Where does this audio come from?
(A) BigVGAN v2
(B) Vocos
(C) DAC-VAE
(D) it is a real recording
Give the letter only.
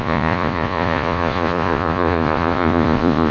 B